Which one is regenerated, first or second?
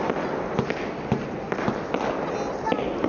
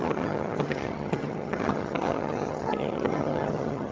second